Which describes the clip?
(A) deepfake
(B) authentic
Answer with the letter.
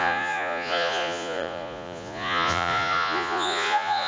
A